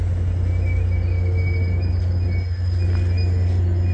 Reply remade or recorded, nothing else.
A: recorded